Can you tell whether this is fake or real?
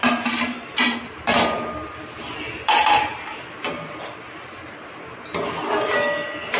real